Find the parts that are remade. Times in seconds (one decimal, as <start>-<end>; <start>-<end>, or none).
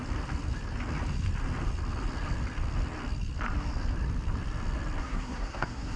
5.0-6.0